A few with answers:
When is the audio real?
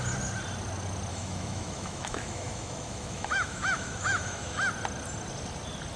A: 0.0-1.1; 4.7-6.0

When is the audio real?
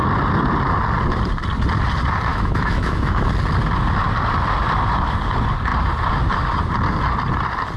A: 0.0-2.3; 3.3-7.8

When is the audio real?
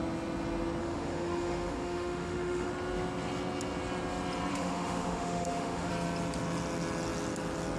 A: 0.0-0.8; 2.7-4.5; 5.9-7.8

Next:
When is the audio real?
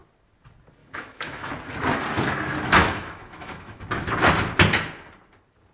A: 0.0-0.8; 1.5-2.8; 3.8-5.7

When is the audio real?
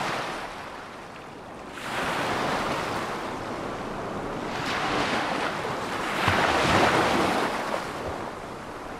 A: 0.0-4.8; 5.3-9.0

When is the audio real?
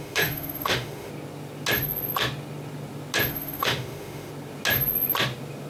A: 1.1-3.3; 4.3-5.7